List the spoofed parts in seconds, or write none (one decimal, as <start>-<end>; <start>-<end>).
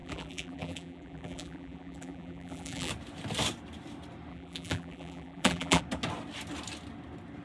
0.0-2.9; 4.3-5.8